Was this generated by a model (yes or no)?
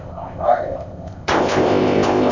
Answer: yes